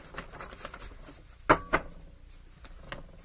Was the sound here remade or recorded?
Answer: recorded